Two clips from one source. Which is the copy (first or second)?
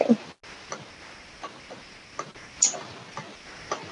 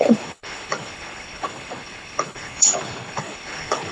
second